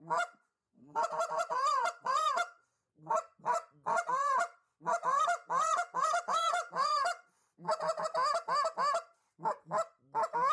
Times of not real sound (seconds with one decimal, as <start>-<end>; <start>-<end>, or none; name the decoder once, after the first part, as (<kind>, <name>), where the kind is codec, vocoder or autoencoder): 0.0-8.1 (vocoder, Vocos)